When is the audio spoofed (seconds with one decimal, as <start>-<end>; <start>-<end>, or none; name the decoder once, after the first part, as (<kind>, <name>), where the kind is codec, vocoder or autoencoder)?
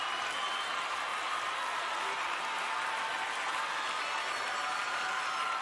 none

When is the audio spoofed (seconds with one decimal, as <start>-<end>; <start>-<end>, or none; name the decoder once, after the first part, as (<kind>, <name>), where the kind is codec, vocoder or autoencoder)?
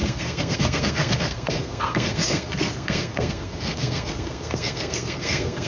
0.0-5.7 (codec, SNAC)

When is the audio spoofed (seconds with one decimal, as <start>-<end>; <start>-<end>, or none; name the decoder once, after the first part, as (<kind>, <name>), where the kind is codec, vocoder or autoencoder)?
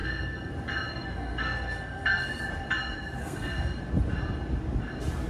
0.0-0.5 (codec, SNAC); 0.9-2.4; 3.2-3.8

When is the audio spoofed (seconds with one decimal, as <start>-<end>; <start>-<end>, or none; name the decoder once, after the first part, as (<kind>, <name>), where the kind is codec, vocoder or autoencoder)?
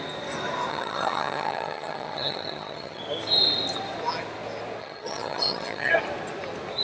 0.7-3.0 (vocoder, HiFi-GAN); 4.8-5.9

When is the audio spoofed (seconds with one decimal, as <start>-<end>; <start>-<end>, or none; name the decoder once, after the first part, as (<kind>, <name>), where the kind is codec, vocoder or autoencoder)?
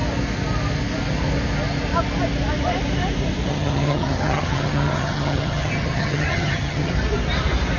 3.5-6.9 (vocoder, HiFi-GAN)